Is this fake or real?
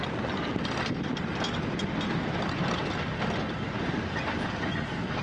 real